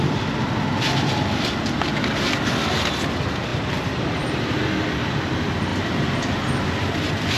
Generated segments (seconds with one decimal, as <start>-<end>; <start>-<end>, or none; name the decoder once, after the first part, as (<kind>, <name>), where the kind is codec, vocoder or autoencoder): 3.5-4.7 (vocoder, BigVGAN v2); 5.7-6.5